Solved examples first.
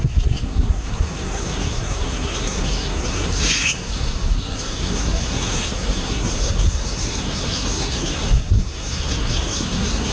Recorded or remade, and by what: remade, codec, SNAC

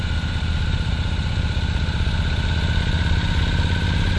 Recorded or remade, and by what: recorded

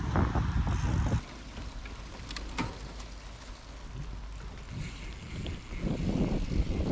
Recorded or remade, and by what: recorded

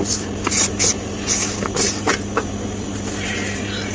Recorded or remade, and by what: recorded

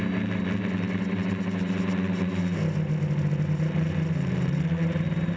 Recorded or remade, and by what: recorded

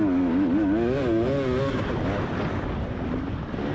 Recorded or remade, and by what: recorded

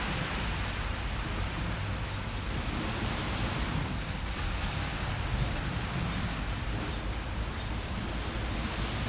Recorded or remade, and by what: recorded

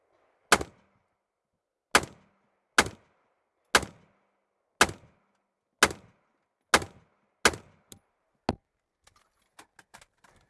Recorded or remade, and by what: recorded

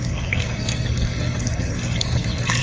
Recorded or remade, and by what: remade, codec, SNAC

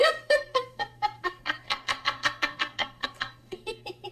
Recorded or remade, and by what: remade, codec, SNAC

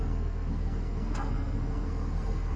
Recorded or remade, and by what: remade, codec, SNAC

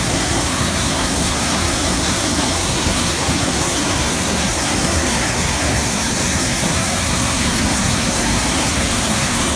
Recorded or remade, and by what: remade, codec, SNAC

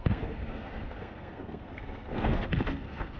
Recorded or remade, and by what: remade, codec, SNAC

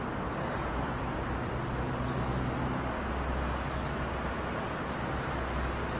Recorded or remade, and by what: recorded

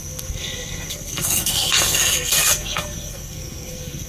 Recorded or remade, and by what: remade, codec, SNAC